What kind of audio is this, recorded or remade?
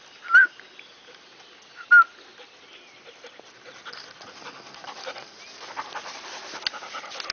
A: recorded